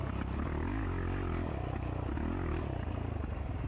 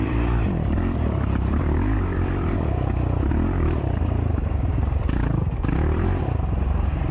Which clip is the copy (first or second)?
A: second